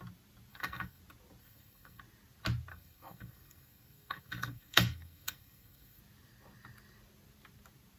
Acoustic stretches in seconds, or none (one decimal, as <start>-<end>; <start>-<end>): 0.0-0.5; 1.0-1.4; 2.0-2.7; 6.0-8.0